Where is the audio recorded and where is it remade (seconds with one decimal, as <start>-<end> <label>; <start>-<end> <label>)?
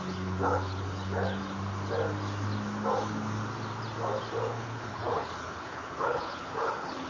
0.0-1.4 remade; 1.4-4.6 recorded; 4.6-7.1 remade